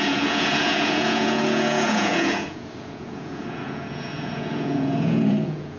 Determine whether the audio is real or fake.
fake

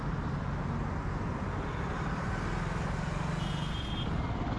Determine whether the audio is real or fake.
real